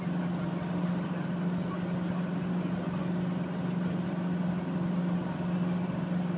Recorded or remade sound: recorded